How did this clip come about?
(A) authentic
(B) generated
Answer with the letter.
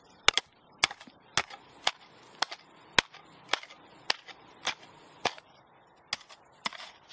A